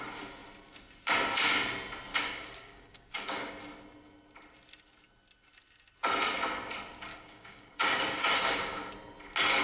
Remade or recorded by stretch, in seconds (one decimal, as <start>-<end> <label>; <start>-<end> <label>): 0.0-2.1 recorded; 2.1-3.5 remade; 3.5-7.1 recorded; 7.1-8.9 remade; 8.9-9.6 recorded